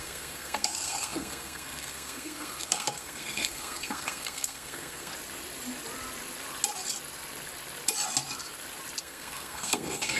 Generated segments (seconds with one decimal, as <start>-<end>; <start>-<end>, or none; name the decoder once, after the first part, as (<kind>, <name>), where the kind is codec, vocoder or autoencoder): 0.0-5.1 (codec, SNAC); 9.0-10.2